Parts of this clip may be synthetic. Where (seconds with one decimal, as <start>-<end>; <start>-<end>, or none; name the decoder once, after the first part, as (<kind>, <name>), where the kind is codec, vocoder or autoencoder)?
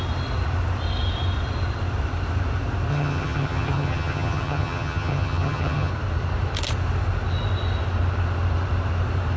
2.9-5.9 (vocoder, HiFi-GAN)